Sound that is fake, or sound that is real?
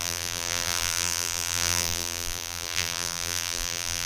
fake